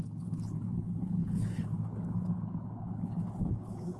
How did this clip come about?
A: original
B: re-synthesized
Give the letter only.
B